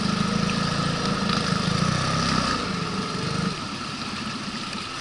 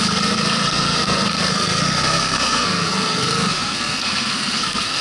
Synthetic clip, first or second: second